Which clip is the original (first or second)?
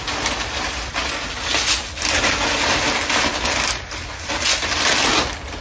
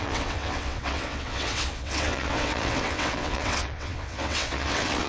first